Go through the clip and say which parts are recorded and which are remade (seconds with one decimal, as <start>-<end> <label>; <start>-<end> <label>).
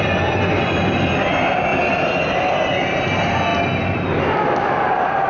0.0-5.3 recorded